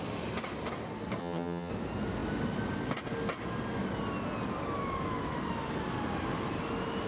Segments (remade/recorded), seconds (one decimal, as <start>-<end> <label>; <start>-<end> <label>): 0.0-1.2 recorded; 1.2-1.7 remade; 1.7-7.1 recorded